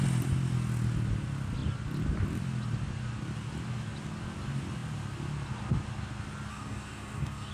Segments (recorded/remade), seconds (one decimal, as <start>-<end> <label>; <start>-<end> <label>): 0.0-6.5 recorded; 6.5-7.5 remade